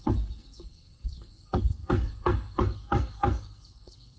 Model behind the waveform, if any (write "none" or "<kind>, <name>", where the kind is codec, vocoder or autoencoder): codec, SNAC